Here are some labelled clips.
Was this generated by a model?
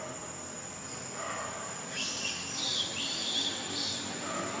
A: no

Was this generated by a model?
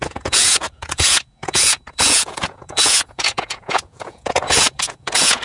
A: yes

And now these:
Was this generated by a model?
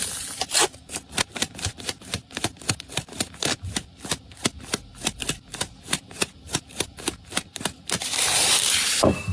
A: no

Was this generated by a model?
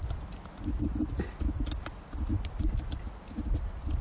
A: no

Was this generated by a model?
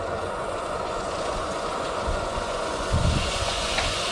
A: yes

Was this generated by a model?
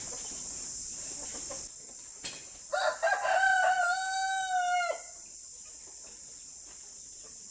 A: no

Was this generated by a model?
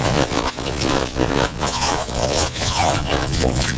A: yes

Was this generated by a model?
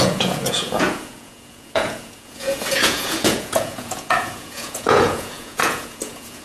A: yes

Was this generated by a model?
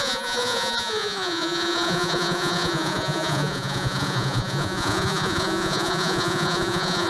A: yes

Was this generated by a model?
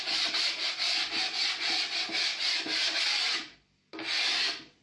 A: no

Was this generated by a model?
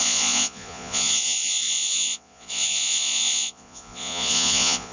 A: yes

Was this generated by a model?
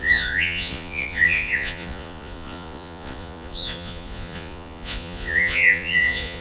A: yes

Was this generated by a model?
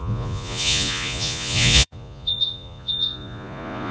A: yes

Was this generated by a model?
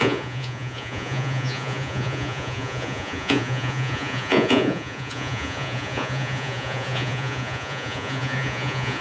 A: yes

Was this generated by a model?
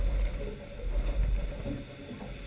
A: no